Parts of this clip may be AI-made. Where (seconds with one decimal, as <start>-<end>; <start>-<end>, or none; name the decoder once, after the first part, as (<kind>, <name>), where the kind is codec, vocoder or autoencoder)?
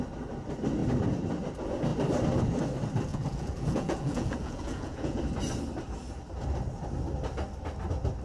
3.1-5.2 (vocoder, Vocos)